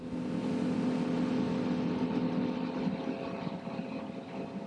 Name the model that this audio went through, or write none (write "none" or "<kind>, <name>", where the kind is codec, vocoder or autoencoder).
none